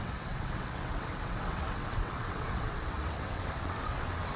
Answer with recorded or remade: remade